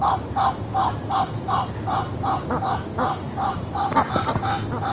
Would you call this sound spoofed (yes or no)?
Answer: no